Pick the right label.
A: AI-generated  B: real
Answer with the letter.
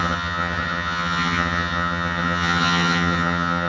A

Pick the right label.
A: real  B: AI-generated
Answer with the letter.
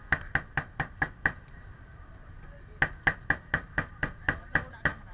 A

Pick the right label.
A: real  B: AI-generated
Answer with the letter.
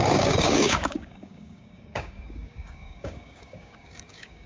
B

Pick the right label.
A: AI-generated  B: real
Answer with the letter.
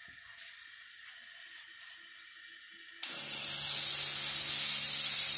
B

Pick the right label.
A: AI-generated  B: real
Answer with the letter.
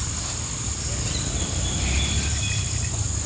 B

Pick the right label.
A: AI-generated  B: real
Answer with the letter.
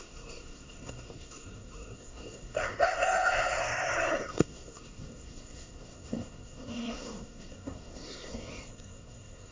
A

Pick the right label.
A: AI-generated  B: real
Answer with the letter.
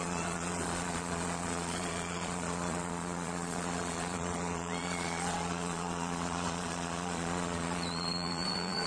A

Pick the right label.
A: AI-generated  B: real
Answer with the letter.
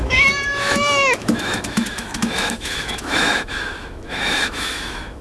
A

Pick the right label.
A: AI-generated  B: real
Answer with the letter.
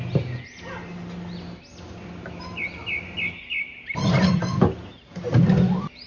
B